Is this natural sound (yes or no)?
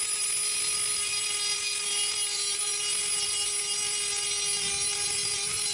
yes